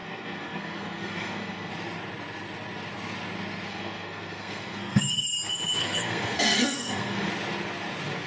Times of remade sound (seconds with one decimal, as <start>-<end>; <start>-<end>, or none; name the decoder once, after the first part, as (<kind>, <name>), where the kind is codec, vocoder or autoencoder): 0.0-1.7 (codec, SNAC); 3.7-5.0; 5.8-7.3